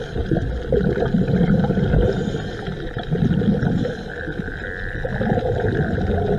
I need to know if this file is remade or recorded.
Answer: recorded